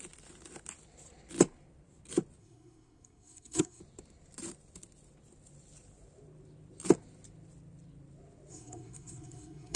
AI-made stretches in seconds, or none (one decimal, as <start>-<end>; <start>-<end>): 2.4-3.8; 8.5-9.8